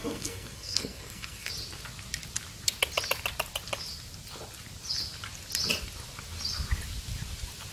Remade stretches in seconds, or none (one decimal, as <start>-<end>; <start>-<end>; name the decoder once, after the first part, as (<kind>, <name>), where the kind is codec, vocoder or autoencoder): 0.0-1.5 (codec, SNAC)